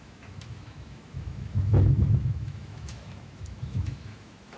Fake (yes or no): yes